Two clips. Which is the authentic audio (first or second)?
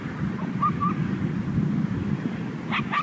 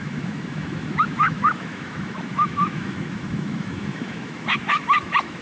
first